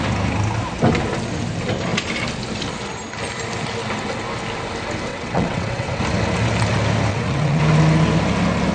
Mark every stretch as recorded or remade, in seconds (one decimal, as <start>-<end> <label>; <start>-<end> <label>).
0.0-5.1 recorded; 5.1-6.0 remade; 6.0-7.1 recorded; 7.1-7.6 remade; 7.6-8.7 recorded

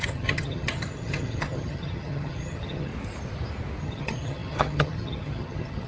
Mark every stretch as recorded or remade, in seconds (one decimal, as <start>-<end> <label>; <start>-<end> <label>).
0.0-2.9 remade; 2.9-3.8 recorded; 3.8-5.9 remade

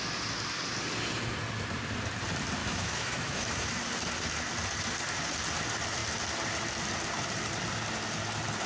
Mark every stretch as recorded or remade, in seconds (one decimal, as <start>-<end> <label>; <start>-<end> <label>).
0.0-2.6 recorded; 2.6-3.7 remade; 3.7-8.7 recorded

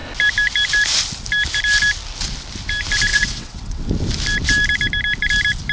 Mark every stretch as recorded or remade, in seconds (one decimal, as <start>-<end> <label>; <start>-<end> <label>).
0.0-3.1 recorded; 3.1-3.8 remade; 3.8-5.7 recorded

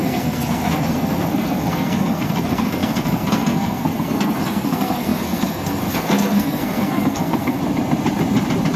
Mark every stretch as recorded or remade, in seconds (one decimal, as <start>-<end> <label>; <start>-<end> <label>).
0.0-7.6 remade; 7.6-8.8 recorded